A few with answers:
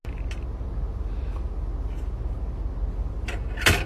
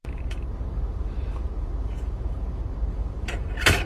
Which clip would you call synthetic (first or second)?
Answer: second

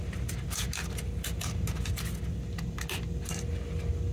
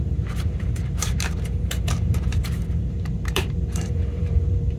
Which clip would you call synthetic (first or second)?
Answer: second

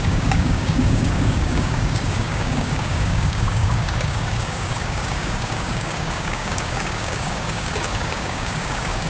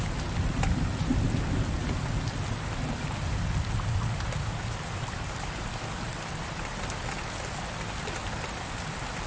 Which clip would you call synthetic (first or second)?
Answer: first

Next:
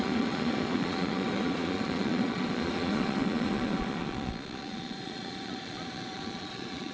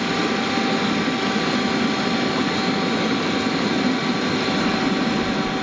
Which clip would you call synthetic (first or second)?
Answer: first